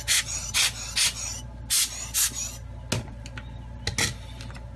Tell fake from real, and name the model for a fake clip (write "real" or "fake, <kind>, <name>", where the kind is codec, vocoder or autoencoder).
real